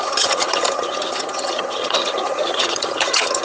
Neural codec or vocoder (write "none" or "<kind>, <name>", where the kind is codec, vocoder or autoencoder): vocoder, HiFi-GAN